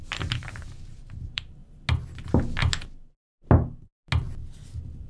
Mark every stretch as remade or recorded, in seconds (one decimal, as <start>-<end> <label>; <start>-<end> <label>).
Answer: 0.0-1.6 remade; 1.6-5.1 recorded